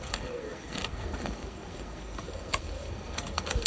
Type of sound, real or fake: fake